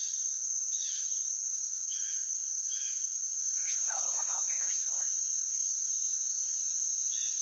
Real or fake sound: fake